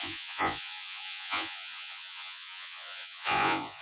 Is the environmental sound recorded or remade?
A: remade